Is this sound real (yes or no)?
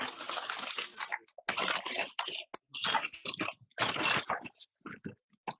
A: yes